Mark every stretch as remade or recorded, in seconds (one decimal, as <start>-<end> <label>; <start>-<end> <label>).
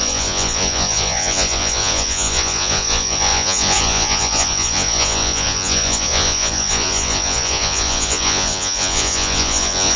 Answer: 0.0-10.0 remade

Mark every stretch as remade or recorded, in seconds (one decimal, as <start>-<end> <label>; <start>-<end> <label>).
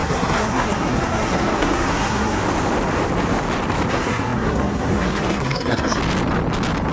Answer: 0.0-2.4 remade; 2.4-3.9 recorded; 3.9-6.0 remade; 6.0-6.9 recorded